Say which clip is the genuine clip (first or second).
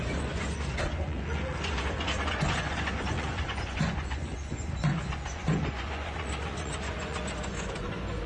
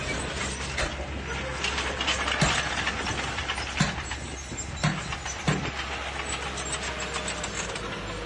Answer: second